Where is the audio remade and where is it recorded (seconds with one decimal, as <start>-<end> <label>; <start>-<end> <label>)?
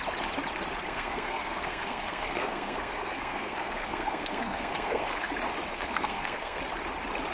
0.0-0.9 recorded; 0.9-5.3 remade; 5.3-5.7 recorded; 5.7-6.6 remade; 6.6-7.3 recorded